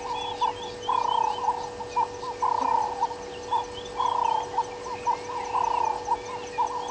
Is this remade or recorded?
recorded